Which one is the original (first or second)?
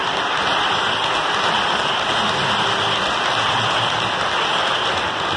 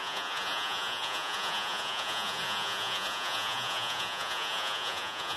first